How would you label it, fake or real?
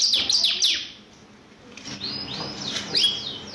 real